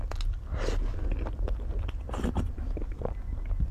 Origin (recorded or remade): recorded